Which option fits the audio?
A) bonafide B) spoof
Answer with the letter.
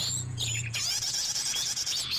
B